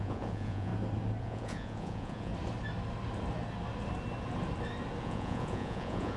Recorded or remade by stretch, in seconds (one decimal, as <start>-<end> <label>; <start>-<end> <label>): 0.0-0.7 remade; 0.7-1.2 recorded; 1.2-2.3 remade; 2.3-5.0 recorded; 5.0-6.2 remade